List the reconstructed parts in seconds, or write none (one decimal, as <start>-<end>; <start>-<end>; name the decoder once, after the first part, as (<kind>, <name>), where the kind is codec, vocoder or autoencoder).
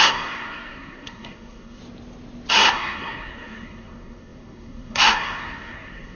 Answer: 0.0-1.8 (codec, SNAC); 2.5-6.2